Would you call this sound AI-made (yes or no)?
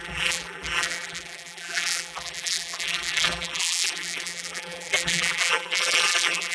yes